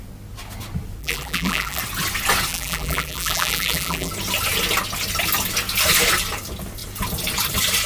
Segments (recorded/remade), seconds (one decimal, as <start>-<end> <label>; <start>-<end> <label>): 0.0-1.0 recorded; 1.0-1.8 remade; 1.8-2.5 recorded; 2.5-4.1 remade; 4.1-7.9 recorded